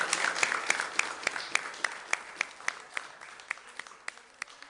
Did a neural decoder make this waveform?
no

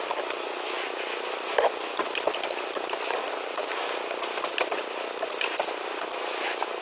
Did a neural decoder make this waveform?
no